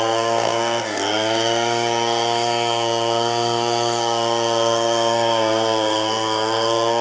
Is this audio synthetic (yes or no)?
yes